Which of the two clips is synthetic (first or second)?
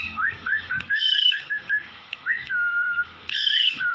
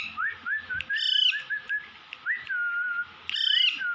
first